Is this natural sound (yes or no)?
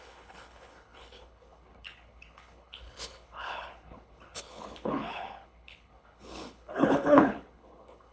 no